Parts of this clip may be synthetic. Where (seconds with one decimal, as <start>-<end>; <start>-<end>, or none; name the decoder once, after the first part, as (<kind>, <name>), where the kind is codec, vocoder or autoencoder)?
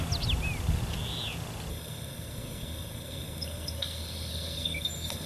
1.7-5.3 (codec, SNAC)